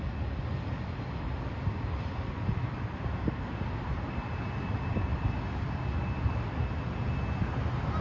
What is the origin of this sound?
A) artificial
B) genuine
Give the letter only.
B